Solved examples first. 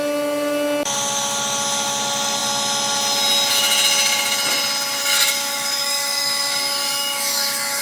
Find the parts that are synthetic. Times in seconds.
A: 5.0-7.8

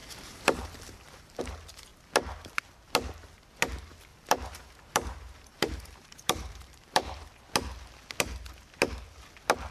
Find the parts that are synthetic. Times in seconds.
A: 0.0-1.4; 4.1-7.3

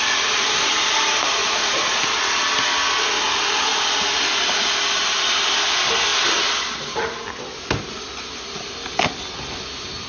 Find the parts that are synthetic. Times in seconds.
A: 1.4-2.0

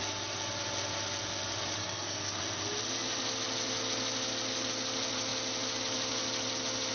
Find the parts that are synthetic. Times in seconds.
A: 1.8-2.4

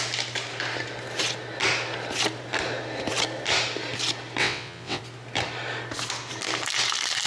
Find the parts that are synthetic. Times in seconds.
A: 4.4-5.0

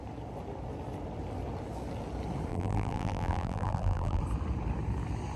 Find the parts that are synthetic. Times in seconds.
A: 2.5-4.2

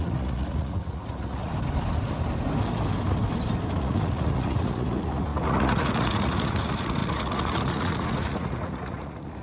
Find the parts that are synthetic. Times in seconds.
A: 0.0-1.5; 3.8-9.4

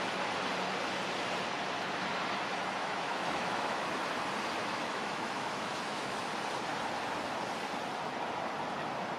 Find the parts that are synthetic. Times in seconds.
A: 2.8-3.9; 4.6-6.2